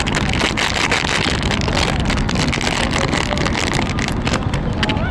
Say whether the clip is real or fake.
real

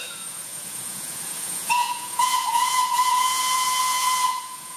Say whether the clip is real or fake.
fake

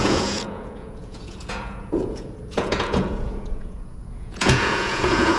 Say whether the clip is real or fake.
fake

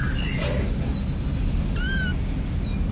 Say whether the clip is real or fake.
real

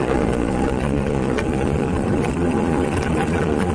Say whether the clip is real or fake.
fake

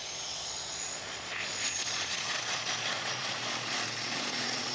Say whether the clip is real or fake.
fake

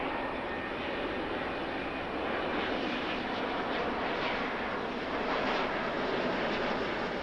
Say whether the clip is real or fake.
real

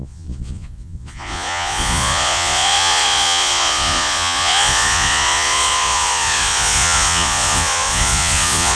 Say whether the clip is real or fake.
fake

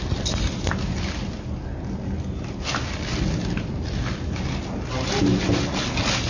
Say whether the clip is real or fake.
real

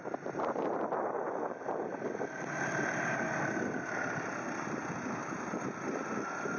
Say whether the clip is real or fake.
real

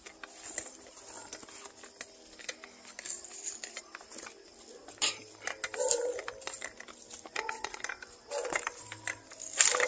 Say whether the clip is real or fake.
real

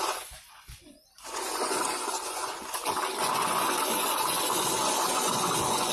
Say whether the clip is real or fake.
fake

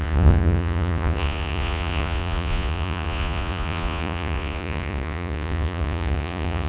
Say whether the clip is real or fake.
fake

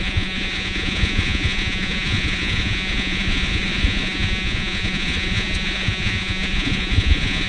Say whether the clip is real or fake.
fake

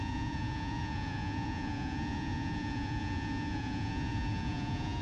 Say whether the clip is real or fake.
fake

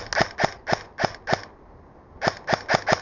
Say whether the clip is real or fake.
real